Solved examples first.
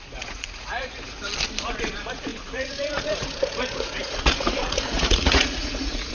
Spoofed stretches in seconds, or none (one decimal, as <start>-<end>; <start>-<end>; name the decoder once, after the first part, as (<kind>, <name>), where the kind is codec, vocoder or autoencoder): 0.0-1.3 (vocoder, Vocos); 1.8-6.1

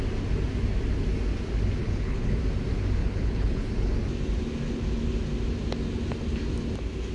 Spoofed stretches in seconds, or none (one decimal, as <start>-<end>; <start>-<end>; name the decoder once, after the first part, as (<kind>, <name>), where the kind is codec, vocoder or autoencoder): 1.8-2.4 (codec, HILCodec); 3.0-3.9

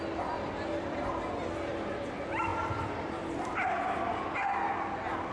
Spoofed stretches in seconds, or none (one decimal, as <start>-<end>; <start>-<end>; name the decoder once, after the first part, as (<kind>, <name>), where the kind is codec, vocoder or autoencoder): none

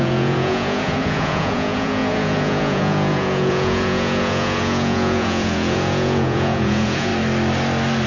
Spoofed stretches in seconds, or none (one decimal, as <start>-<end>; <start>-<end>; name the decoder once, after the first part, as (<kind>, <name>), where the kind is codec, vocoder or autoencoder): 0.0-7.1 (vocoder, Vocos)

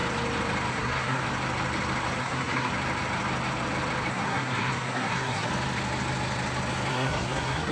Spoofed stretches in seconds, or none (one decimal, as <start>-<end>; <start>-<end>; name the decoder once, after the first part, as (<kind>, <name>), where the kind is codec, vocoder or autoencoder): 0.7-1.2 (codec, SNAC); 2.2-2.7; 4.1-5.5; 6.9-7.7

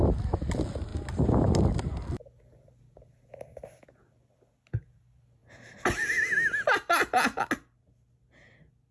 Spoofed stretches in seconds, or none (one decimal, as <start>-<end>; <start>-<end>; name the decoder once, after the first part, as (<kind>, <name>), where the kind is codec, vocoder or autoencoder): none

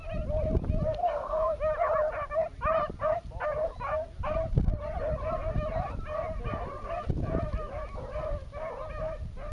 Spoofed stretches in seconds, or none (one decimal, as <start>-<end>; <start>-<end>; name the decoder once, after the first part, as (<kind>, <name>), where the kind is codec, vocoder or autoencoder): 1.0-1.6 (codec, SNAC)

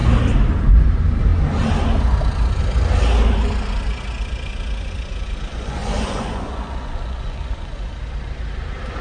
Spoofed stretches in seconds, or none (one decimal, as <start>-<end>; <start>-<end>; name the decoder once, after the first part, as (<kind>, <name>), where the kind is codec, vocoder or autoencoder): 5.5-7.9 (vocoder, Vocos)